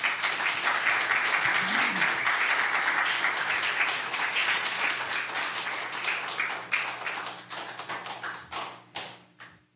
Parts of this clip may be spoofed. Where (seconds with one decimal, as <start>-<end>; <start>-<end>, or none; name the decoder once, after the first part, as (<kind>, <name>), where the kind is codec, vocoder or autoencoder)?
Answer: 4.4-5.1 (vocoder, Vocos)